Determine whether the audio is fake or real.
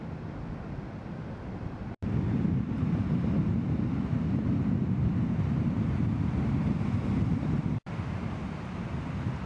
real